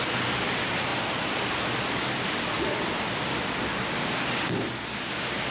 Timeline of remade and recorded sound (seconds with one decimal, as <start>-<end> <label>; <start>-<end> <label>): 0.0-5.5 recorded